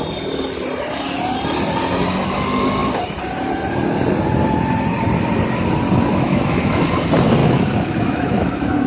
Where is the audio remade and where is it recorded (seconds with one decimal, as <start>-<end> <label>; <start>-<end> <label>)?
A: 0.0-6.1 recorded; 6.1-6.8 remade; 6.8-7.4 recorded; 7.4-8.9 remade

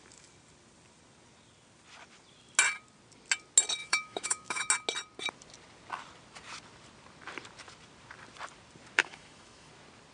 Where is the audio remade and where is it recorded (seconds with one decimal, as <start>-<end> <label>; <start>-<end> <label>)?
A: 0.0-3.8 recorded; 3.8-4.7 remade; 4.7-9.0 recorded; 9.0-9.7 remade; 9.7-10.1 recorded